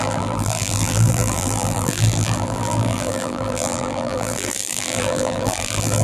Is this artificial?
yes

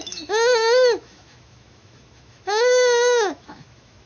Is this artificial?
yes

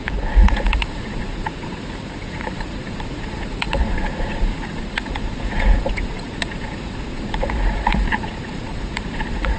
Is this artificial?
yes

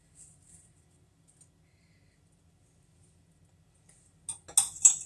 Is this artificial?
no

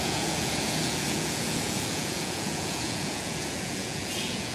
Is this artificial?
yes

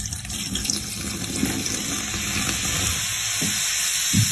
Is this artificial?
no